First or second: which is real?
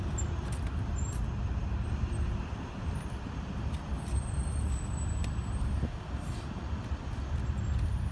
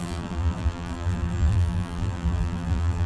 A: first